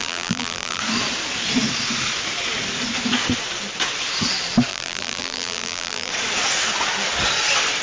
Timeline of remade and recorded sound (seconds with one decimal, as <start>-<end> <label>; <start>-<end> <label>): 0.0-0.8 remade; 0.8-4.7 recorded; 4.7-6.1 remade; 6.1-7.8 recorded